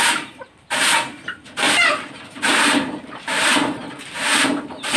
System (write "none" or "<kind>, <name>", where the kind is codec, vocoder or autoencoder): vocoder, BigVGAN v2